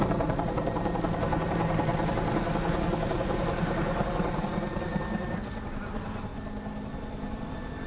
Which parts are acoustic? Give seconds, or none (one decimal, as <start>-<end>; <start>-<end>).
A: 1.9-3.1; 6.3-6.9